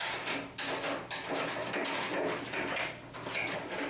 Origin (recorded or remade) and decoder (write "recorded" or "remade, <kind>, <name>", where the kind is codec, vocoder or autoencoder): recorded